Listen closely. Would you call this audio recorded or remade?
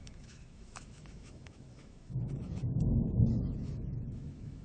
remade